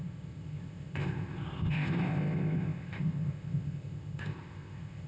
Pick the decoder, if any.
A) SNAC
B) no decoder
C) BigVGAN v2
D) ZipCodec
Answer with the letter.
D